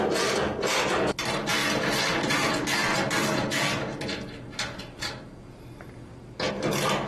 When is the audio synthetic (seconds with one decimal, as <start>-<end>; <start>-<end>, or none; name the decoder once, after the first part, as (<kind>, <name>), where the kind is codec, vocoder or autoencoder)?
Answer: none